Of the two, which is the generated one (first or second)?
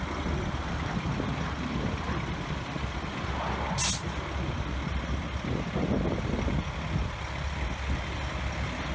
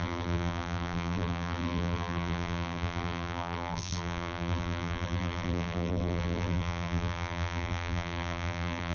second